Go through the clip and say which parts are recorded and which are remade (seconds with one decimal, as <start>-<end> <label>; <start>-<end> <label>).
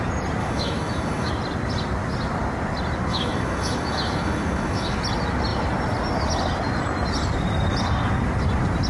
0.0-0.4 recorded; 0.4-1.3 remade; 1.3-3.1 recorded; 3.1-5.0 remade; 5.0-8.9 recorded